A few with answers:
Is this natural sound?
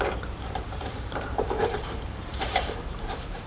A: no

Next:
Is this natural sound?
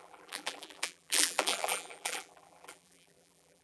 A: no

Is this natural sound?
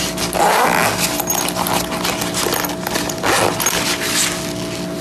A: yes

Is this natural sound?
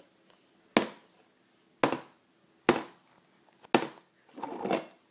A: yes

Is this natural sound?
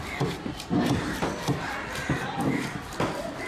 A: no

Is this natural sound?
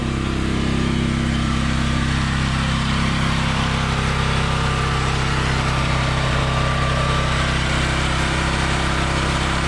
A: no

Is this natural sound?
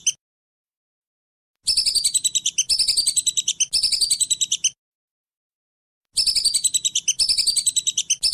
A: yes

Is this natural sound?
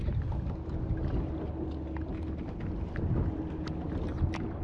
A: yes